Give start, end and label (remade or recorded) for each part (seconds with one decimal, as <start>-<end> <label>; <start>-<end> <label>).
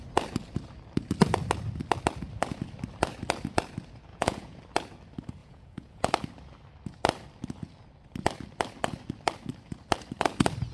0.0-4.1 recorded; 4.1-4.6 remade; 4.6-5.4 recorded; 5.4-6.1 remade; 6.1-10.7 recorded